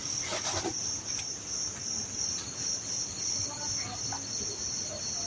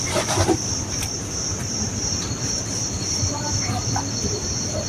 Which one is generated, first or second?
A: second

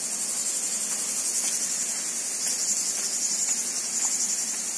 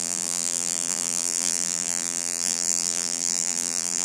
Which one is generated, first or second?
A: second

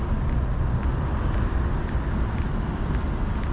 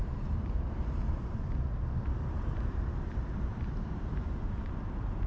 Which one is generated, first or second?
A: second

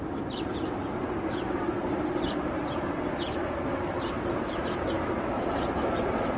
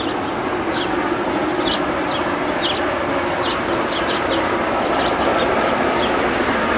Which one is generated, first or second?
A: first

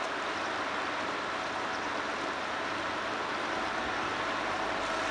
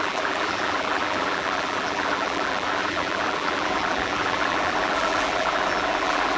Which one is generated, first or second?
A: second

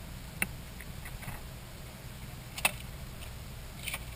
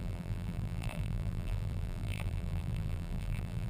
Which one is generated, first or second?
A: second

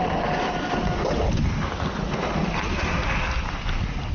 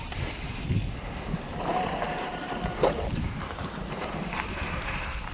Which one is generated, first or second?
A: second